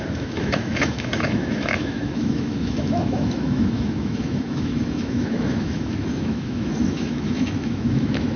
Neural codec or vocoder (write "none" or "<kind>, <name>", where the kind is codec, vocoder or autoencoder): autoencoder, DAC-VAE